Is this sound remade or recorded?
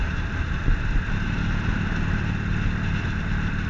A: recorded